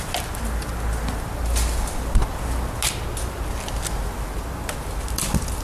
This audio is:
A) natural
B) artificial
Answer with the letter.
A